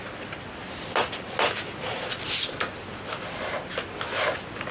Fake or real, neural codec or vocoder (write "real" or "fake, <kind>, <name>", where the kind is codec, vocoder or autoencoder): real